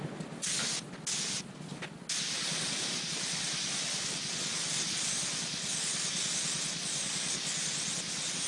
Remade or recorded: recorded